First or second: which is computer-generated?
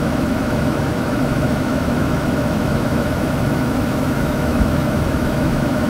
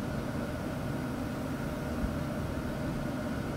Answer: first